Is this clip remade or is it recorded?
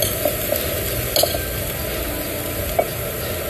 recorded